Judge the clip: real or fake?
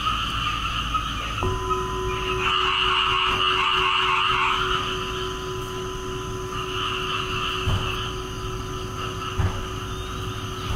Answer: real